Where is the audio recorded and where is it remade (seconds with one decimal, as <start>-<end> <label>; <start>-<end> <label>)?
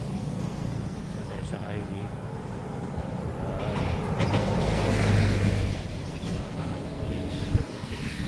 0.0-3.2 remade; 3.2-4.3 recorded; 4.3-8.3 remade